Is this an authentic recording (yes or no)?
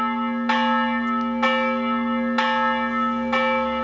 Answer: yes